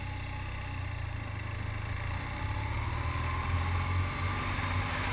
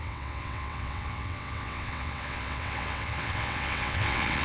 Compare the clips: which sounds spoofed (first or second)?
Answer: second